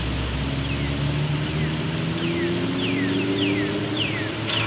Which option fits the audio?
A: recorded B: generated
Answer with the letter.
A